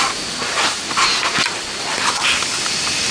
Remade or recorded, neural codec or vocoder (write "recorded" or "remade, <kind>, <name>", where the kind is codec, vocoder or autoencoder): recorded